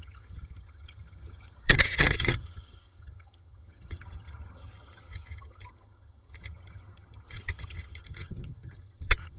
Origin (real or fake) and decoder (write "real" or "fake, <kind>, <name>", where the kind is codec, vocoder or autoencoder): fake, vocoder, HiFi-GAN